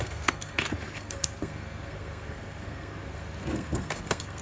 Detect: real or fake fake